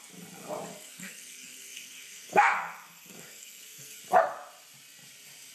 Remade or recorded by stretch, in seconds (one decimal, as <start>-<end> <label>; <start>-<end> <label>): 0.0-0.7 recorded; 0.7-4.0 remade; 4.0-5.5 recorded